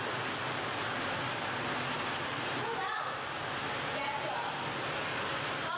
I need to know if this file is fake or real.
real